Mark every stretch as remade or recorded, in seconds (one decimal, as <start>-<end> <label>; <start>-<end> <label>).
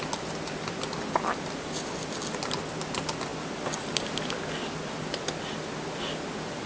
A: 0.0-6.7 recorded